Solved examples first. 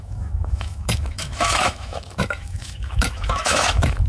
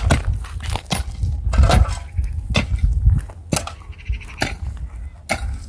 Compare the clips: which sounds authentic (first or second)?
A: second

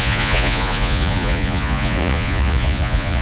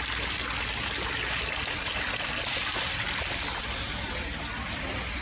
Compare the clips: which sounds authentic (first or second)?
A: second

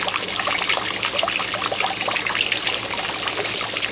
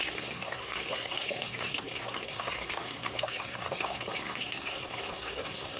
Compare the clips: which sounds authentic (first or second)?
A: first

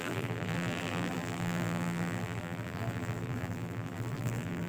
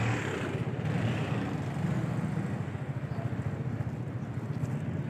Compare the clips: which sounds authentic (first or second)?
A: second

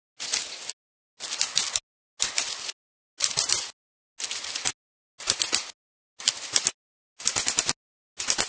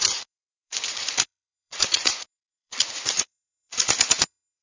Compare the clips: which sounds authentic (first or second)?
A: first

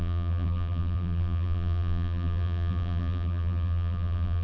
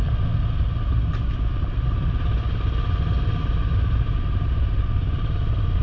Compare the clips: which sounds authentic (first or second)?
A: second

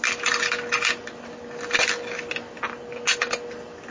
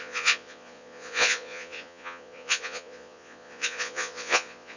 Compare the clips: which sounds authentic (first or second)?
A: first